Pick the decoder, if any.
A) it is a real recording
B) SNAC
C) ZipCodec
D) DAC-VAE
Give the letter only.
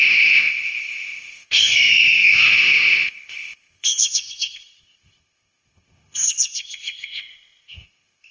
C